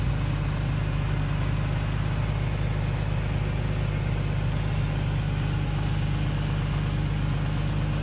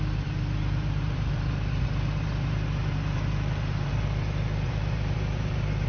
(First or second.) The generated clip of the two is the second